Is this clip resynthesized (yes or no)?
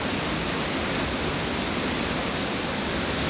no